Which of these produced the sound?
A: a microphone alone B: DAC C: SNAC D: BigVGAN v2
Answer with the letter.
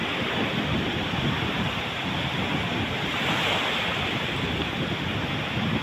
A